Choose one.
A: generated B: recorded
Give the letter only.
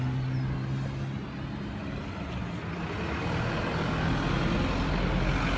B